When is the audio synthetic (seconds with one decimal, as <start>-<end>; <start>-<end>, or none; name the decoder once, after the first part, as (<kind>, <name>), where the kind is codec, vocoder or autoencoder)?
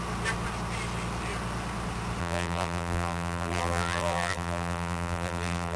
2.2-5.8 (vocoder, BigVGAN v2)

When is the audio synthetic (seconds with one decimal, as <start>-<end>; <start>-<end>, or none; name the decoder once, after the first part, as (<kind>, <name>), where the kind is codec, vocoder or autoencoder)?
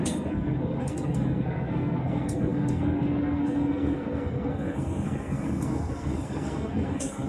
0.0-7.3 (codec, SNAC)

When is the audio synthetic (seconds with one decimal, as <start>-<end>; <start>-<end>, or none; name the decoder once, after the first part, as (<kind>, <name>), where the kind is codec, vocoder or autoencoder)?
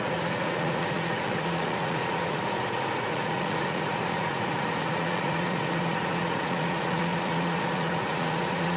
0.0-8.8 (vocoder, Vocos)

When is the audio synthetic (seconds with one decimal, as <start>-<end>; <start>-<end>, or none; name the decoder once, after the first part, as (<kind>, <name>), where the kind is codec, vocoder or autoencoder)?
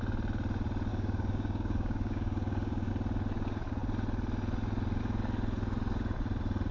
0.9-2.9 (codec, DAC)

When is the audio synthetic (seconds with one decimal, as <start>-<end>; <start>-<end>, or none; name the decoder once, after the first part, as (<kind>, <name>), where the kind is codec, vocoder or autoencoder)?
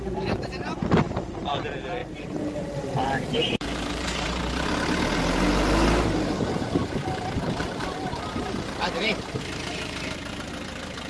2.0-4.4 (vocoder, BigVGAN v2); 6.8-10.5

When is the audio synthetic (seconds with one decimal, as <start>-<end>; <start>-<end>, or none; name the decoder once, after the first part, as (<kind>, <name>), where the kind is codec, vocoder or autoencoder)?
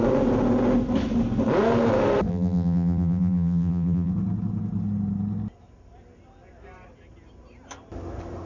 2.3-4.1 (vocoder, BigVGAN v2)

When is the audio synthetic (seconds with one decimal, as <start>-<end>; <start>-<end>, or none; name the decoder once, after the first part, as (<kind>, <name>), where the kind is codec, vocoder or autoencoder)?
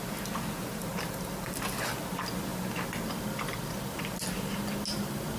none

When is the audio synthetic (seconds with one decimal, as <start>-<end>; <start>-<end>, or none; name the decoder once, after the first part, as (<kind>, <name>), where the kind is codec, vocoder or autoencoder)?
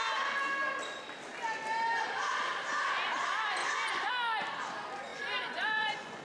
3.6-4.1 (vocoder, Vocos); 5.1-6.2